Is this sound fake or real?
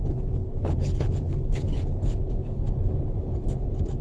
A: fake